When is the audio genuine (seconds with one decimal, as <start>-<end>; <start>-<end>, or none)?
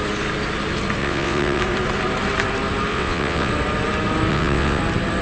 0.0-1.0; 1.6-2.9; 3.5-4.3; 4.8-5.2